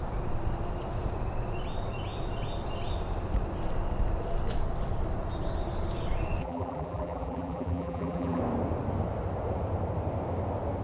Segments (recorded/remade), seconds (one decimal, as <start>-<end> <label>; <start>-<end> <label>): 0.0-6.4 recorded; 6.4-8.4 remade; 8.4-10.8 recorded